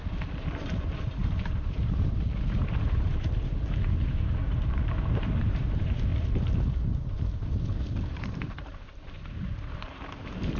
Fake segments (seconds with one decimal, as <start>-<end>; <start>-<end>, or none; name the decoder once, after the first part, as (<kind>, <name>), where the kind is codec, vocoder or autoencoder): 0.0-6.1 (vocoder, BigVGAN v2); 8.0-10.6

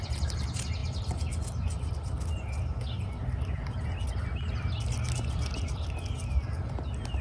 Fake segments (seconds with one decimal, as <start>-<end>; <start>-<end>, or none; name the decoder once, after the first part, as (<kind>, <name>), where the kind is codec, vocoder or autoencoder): none

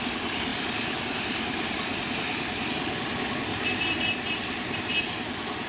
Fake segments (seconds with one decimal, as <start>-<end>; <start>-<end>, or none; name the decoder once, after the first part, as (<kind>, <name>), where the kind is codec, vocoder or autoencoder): none

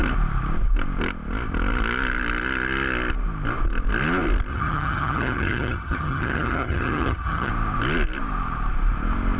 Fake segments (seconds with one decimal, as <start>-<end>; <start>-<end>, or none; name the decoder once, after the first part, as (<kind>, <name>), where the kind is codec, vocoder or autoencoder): 4.5-7.5 (vocoder, HiFi-GAN)

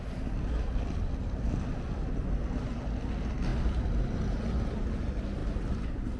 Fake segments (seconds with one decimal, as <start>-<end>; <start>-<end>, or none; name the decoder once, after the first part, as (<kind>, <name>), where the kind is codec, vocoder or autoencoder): none

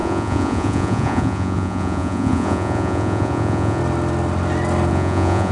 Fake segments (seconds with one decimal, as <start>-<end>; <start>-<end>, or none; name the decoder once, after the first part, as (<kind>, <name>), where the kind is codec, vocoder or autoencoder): 0.0-3.8 (vocoder, Vocos); 4.9-5.5

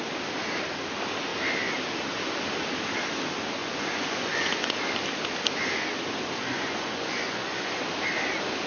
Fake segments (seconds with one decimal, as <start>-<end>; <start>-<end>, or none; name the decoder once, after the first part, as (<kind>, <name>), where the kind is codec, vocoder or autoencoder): 3.6-4.7 (vocoder, Vocos); 6.4-7.7